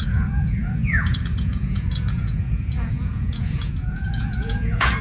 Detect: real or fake fake